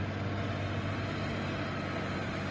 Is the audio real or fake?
real